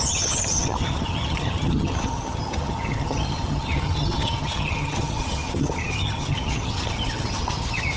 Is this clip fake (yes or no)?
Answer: yes